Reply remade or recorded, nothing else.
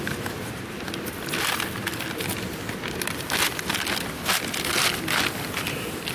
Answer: recorded